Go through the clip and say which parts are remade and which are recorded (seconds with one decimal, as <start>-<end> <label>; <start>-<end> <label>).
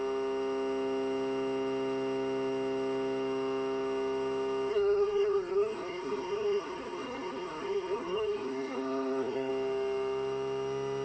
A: 0.0-4.7 recorded; 4.7-9.5 remade; 9.5-11.0 recorded